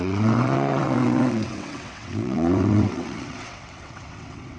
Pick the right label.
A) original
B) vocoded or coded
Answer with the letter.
B